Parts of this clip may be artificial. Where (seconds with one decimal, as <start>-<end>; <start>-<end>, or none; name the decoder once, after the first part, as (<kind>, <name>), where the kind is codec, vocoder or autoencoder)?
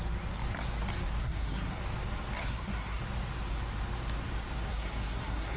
1.2-1.8 (codec, SNAC); 2.4-3.0; 4.7-5.6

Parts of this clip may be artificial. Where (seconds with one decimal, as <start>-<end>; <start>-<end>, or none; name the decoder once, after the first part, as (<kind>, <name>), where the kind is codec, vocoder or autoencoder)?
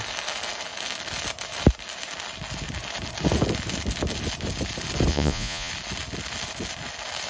5.1-5.7 (vocoder, Vocos)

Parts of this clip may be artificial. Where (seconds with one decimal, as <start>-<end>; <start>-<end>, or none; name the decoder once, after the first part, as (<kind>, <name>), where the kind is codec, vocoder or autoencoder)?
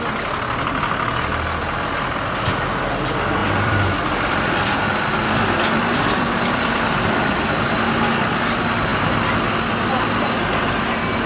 3.4-7.5 (vocoder, BigVGAN v2)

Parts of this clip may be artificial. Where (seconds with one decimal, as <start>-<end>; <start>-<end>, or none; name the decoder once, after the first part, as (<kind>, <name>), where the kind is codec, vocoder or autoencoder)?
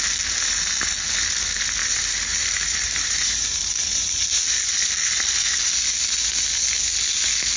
1.8-4.4 (vocoder, BigVGAN v2)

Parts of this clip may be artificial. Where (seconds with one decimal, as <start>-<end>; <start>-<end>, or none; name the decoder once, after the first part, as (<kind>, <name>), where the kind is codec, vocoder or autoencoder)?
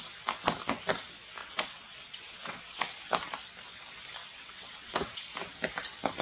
1.4-3.0 (vocoder, WaveNeXt); 4.2-5.2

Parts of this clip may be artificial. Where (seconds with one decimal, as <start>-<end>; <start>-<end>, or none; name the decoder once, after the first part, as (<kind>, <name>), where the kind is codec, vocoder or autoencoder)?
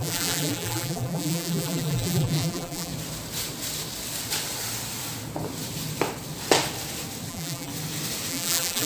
0.0-2.9 (vocoder, BigVGAN v2); 7.3-7.7; 8.3-8.9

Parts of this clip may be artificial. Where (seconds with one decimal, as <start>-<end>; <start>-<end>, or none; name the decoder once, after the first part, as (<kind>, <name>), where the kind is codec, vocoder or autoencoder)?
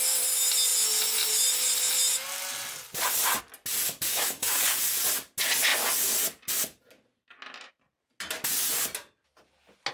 4.1-4.8 (codec, DAC)